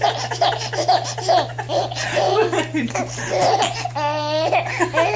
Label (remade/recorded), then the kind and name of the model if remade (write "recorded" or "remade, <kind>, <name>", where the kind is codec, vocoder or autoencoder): recorded